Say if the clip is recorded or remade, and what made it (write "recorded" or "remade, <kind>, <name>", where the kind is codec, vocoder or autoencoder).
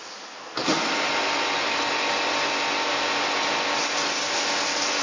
recorded